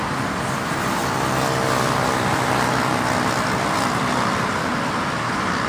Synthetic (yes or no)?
no